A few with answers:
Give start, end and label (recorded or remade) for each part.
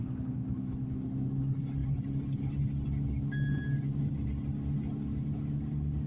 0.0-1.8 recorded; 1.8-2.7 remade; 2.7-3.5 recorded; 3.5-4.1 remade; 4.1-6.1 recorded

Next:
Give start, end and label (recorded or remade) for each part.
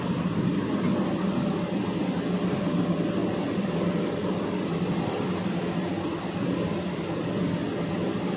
0.0-8.4 recorded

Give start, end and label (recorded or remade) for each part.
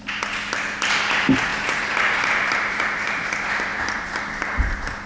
0.0-1.5 recorded; 1.5-3.2 remade; 3.2-3.7 recorded; 3.7-5.1 remade